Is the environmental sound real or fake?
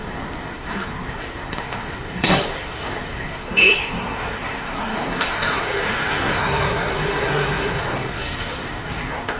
fake